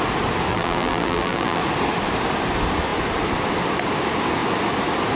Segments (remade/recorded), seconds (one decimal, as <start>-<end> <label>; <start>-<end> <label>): 0.0-0.5 recorded; 0.5-1.6 remade; 1.6-5.2 recorded